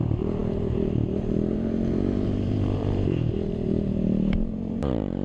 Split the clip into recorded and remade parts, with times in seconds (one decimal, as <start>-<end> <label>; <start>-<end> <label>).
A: 0.0-5.2 remade